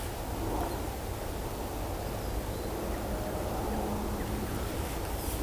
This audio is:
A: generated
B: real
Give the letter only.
B